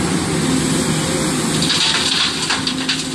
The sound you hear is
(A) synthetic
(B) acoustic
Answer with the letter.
B